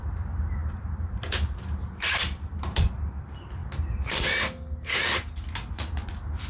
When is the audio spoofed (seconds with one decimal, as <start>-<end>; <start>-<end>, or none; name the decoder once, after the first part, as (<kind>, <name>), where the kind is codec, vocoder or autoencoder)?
0.0-3.6 (vocoder, BigVGAN v2); 5.7-6.5